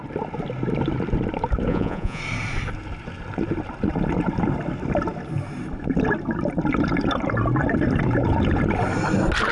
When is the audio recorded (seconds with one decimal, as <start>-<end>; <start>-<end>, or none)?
0.0-1.7; 2.2-9.5

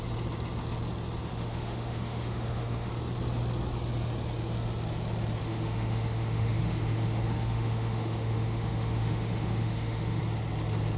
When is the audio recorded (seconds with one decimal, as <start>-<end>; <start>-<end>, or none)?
0.0-1.3; 2.9-5.4; 10.2-11.0

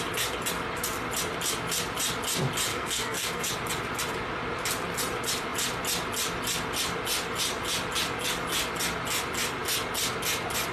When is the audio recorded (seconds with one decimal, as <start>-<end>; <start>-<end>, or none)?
0.0-2.7; 3.5-10.7